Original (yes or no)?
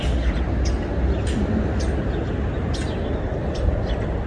yes